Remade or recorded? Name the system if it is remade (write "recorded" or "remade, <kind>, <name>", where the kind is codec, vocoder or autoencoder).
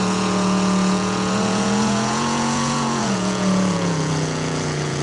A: remade, vocoder, Vocos